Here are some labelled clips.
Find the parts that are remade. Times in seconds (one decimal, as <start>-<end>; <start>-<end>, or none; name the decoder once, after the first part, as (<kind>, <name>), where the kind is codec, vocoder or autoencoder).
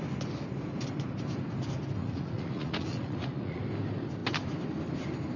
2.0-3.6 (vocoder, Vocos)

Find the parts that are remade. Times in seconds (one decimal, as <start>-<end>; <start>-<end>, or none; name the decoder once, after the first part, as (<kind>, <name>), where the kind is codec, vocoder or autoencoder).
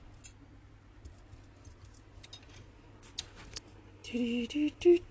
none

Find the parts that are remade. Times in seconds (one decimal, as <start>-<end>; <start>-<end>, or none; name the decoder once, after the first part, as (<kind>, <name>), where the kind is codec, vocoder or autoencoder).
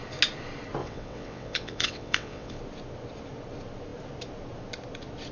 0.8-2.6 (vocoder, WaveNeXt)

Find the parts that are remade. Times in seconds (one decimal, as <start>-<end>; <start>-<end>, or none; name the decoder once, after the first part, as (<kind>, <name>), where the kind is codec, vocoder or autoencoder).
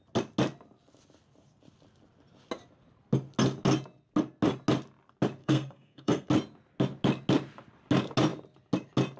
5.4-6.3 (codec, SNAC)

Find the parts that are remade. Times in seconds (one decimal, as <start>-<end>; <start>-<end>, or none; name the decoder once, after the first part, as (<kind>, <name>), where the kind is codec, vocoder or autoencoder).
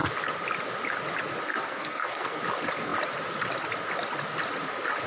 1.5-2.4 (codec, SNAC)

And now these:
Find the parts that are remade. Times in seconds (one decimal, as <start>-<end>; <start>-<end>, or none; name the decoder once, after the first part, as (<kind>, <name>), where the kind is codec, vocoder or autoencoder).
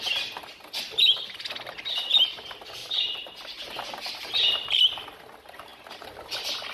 2.8-3.8 (vocoder, BigVGAN v2)